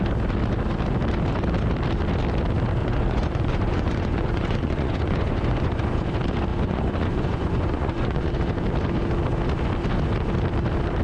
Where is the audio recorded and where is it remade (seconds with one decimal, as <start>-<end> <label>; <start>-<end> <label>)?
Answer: 0.0-2.8 recorded; 2.8-6.1 remade; 6.1-6.5 recorded; 6.5-8.3 remade; 8.3-11.0 recorded

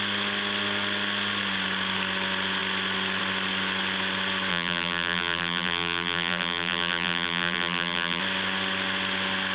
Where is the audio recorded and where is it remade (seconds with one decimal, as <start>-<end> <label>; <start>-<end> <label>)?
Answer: 0.0-4.5 recorded; 4.5-8.2 remade; 8.2-9.5 recorded

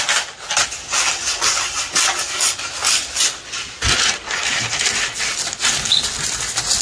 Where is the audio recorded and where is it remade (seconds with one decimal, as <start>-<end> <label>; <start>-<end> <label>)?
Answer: 0.0-6.8 recorded

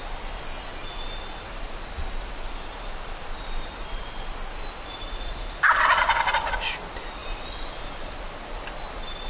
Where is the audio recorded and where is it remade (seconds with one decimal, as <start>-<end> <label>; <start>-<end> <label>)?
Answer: 0.0-9.3 recorded

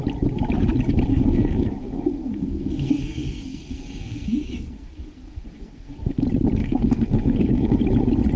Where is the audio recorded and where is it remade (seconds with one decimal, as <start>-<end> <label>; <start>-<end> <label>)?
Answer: 0.0-1.1 recorded; 1.1-6.1 remade; 6.1-6.6 recorded; 6.6-7.8 remade; 7.8-8.4 recorded

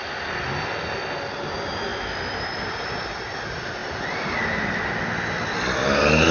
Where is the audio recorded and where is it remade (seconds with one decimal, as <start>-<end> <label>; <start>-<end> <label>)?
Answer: 0.0-6.3 recorded

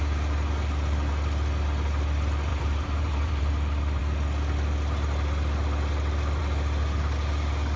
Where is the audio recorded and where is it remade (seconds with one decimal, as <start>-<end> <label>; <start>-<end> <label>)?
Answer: 0.0-2.5 recorded; 2.5-3.5 remade; 3.5-7.8 recorded